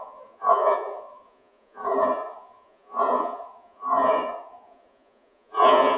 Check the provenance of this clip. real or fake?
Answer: fake